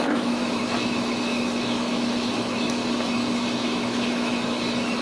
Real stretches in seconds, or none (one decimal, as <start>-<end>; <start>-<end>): 2.8-3.6